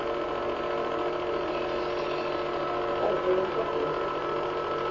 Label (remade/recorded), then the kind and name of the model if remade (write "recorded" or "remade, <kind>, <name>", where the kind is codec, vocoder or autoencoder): recorded